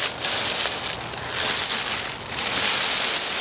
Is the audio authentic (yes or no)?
yes